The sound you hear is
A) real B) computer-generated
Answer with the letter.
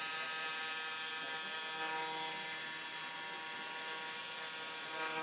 A